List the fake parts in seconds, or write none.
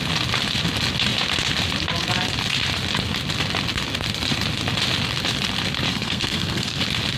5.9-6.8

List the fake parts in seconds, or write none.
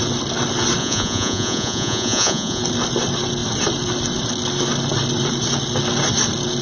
0.8-2.6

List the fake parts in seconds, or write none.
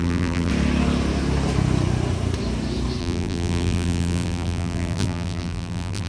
0.0-0.5; 3.0-6.1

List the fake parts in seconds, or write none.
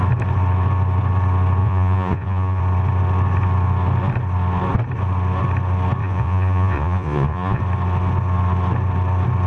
1.6-2.6; 6.0-7.6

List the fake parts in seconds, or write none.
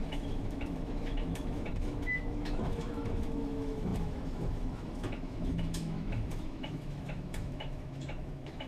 0.0-8.7